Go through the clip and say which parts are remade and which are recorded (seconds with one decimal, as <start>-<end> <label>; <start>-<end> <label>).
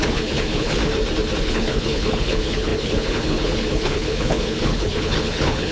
0.0-0.8 remade; 0.8-1.4 recorded; 1.4-5.7 remade